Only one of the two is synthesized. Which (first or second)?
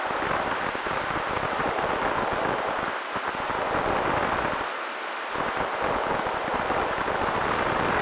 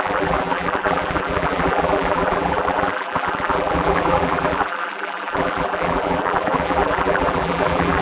second